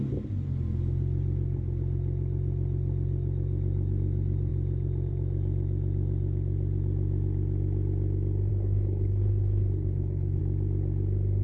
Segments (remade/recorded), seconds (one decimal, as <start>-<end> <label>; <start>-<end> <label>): 0.0-8.5 recorded; 8.5-10.4 remade; 10.4-11.4 recorded